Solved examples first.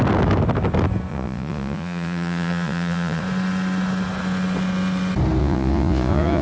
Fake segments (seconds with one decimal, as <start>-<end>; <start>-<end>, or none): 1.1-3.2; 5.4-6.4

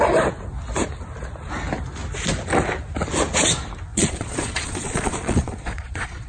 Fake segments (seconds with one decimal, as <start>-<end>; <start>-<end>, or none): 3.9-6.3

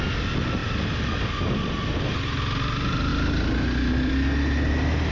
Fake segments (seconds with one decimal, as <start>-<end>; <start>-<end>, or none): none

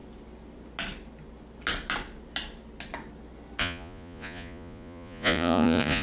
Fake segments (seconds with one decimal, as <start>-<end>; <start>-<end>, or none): 3.6-6.0

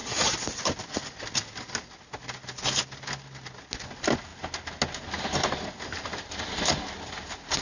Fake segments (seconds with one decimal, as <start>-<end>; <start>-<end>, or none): none

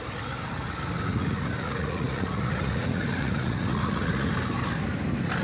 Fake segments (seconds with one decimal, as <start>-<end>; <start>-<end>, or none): 1.1-4.3

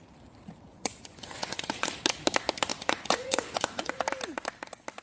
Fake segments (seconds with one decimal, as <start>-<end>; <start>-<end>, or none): 0.7-1.9; 2.7-4.0

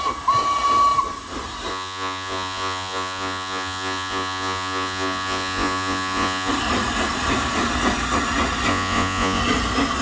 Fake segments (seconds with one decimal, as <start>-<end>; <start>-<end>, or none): 1.7-6.5; 8.7-9.4